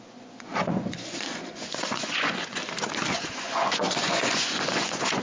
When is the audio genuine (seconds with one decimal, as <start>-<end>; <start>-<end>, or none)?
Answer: 2.6-3.1